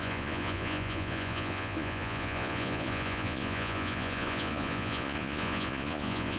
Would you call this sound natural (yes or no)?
no